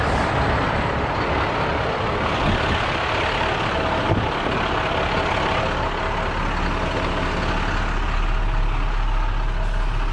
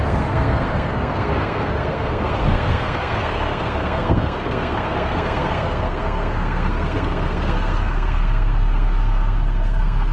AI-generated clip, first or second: second